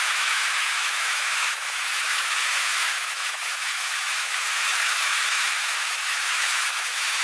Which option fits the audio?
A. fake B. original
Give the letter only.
A